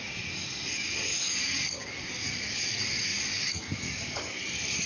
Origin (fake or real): fake